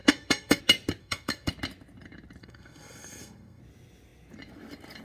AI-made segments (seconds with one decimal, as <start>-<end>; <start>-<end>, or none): 0.0-0.6; 1.0-1.5; 2.4-3.6